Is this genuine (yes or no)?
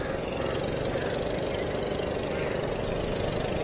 yes